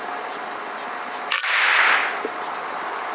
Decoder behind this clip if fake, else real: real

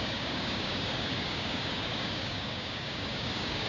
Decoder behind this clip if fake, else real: fake, codec, DAC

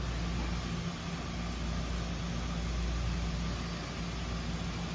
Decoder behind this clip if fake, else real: real